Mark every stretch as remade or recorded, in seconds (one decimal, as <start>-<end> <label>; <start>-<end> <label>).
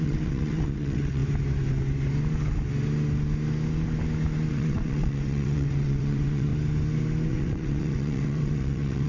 0.0-1.2 remade; 1.2-4.5 recorded; 4.5-6.5 remade; 6.5-7.3 recorded; 7.3-9.1 remade